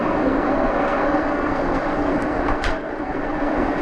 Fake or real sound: fake